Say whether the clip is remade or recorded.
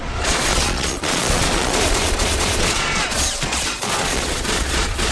remade